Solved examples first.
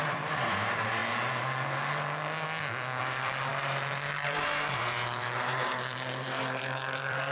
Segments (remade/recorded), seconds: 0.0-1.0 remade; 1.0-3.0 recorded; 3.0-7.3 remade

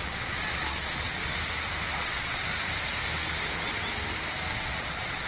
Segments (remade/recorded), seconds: 0.0-1.2 remade; 1.2-2.0 recorded; 2.0-2.4 remade; 2.4-4.5 recorded; 4.5-5.3 remade

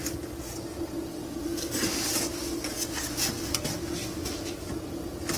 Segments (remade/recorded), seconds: 0.0-4.0 recorded; 4.0-4.7 remade; 4.7-5.4 recorded

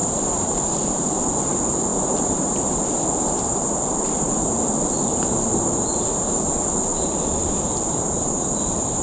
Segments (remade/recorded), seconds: 0.0-1.4 remade; 1.4-1.9 recorded; 1.9-5.2 remade; 5.2-7.4 recorded; 7.4-9.0 remade

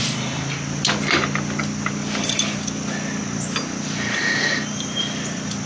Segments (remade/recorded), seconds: 0.0-5.7 recorded

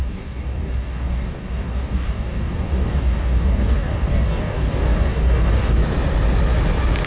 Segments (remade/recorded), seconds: 0.0-5.8 remade; 5.8-7.1 recorded

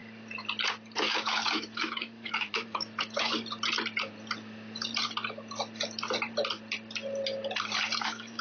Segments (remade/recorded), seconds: 0.0-1.0 recorded; 1.0-3.4 remade; 3.4-8.0 recorded; 8.0-8.4 remade

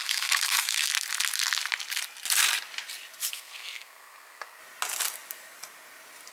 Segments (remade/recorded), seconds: 0.0-0.9 remade; 0.9-3.3 recorded; 3.3-4.6 remade; 4.6-6.3 recorded